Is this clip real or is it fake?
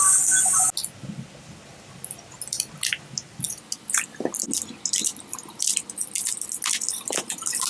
real